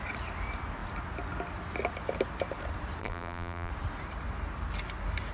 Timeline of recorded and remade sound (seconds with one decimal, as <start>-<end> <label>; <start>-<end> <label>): 0.0-3.0 recorded; 3.0-3.7 remade; 3.7-5.3 recorded

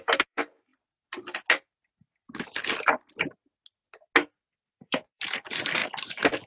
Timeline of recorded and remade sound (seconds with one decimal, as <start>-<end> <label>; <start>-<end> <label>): 0.0-0.7 remade; 0.7-4.6 recorded; 4.6-6.5 remade

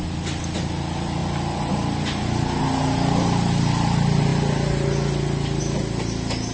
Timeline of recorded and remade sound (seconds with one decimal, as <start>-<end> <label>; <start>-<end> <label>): 0.0-6.5 recorded

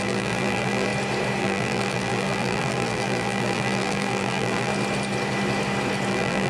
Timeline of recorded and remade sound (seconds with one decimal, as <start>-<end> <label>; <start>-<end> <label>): 0.0-0.9 remade; 0.9-1.4 recorded; 1.4-4.7 remade; 4.7-6.1 recorded; 6.1-6.5 remade

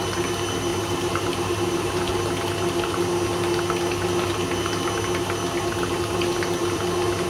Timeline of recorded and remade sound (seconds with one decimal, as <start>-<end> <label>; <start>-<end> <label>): 0.0-0.7 recorded; 0.7-2.1 remade; 2.1-6.6 recorded; 6.6-7.3 remade

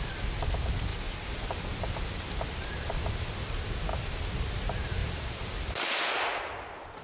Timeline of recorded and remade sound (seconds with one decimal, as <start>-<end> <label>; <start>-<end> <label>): 0.0-0.9 recorded; 0.9-1.6 remade; 1.6-5.0 recorded; 5.0-5.7 remade; 5.7-7.0 recorded

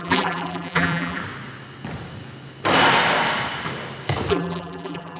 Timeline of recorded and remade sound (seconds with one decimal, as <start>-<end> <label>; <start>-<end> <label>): 0.0-1.2 remade; 1.2-4.3 recorded; 4.3-5.2 remade

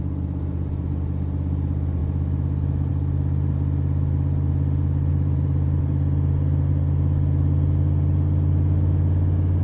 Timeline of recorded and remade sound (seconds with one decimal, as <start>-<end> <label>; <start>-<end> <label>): 0.0-5.1 recorded; 5.1-5.8 remade; 5.8-9.6 recorded